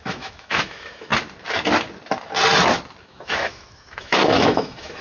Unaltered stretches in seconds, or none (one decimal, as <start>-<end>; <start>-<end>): 1.1-3.0